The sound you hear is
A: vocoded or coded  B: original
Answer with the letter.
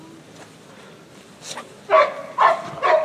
B